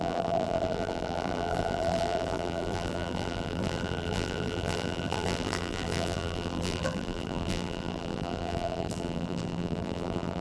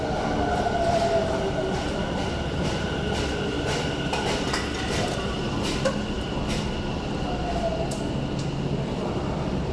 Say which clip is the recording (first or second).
second